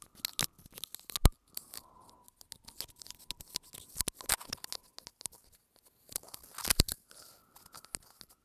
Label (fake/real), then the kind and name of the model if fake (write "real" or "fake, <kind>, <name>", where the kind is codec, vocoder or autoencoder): real